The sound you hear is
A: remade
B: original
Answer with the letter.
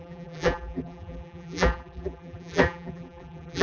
A